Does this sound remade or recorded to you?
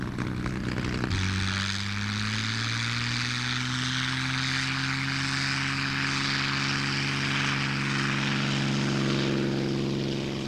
recorded